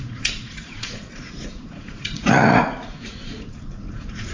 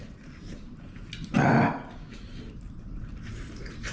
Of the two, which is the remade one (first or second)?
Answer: first